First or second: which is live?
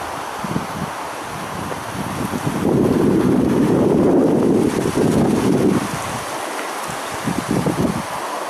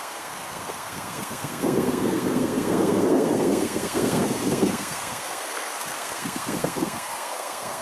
first